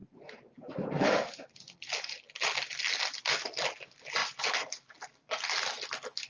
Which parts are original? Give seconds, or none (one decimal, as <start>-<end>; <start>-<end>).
1.6-6.3

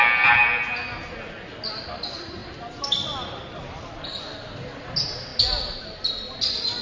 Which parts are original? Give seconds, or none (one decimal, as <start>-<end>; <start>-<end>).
0.0-2.4; 3.3-6.8

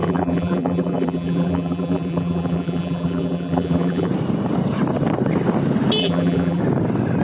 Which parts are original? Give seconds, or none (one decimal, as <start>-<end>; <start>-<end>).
4.1-6.0; 6.6-7.2

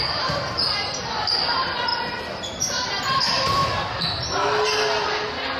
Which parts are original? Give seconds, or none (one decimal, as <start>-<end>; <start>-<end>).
1.9-3.1; 3.6-5.6

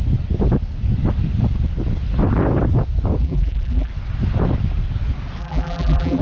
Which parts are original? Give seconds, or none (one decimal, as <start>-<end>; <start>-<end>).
0.0-3.2; 3.9-5.4